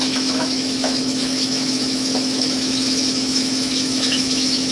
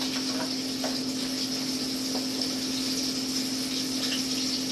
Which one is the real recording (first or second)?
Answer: second